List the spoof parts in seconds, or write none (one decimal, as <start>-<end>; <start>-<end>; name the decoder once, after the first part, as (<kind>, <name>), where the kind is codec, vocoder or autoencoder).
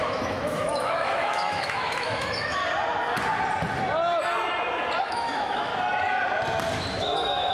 0.0-2.6 (autoencoder, DAC-VAE); 5.0-5.7; 6.9-7.5